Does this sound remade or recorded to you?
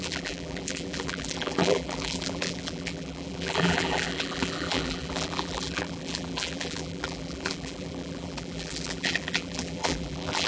remade